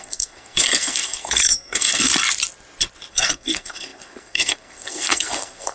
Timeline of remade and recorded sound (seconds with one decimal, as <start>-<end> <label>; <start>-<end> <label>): 0.0-2.1 remade; 2.1-3.1 recorded; 3.1-5.7 remade